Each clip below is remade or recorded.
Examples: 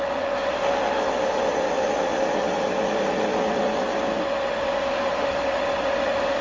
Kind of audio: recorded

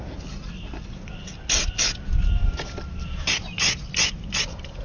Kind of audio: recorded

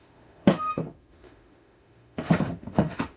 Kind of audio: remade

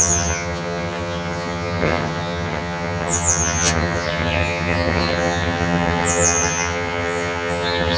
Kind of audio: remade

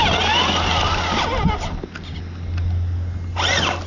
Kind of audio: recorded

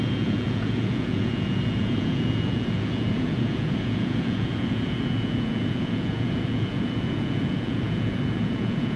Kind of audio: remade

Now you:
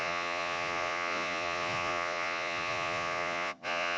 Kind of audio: remade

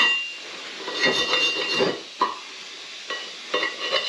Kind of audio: recorded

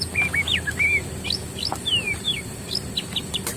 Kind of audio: recorded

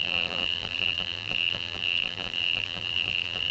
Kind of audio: remade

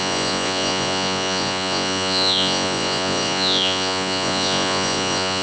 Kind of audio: remade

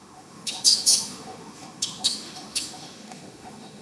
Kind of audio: remade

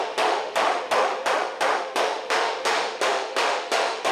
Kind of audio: remade